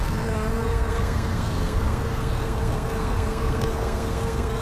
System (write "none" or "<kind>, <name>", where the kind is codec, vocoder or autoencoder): codec, SNAC